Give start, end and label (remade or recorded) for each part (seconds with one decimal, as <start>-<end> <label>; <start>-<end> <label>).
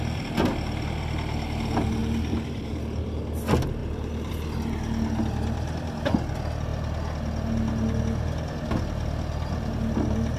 0.0-2.0 recorded; 2.0-2.8 remade; 2.8-3.8 recorded; 3.8-4.3 remade; 4.3-10.4 recorded